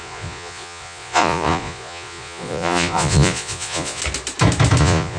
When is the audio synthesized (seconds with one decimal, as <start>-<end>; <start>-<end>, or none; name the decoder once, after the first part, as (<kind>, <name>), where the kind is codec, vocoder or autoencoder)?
0.0-4.0 (vocoder, Vocos); 4.8-5.2